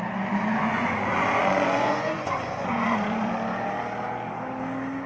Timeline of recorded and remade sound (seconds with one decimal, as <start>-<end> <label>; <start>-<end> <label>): 0.0-0.5 recorded; 0.5-3.3 remade; 3.3-5.1 recorded